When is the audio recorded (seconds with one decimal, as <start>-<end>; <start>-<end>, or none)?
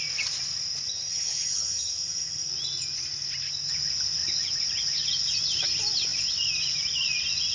0.0-0.9; 2.5-7.5